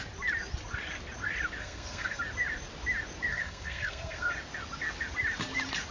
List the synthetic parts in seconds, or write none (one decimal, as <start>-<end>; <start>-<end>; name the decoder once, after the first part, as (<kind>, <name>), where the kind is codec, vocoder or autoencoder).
1.6-2.2 (codec, SNAC); 3.3-4.3